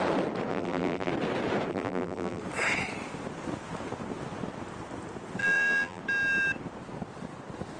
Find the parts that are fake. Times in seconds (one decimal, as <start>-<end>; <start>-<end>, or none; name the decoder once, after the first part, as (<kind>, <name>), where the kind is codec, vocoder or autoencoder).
0.5-1.1 (vocoder, BigVGAN v2); 1.7-2.4; 5.4-6.0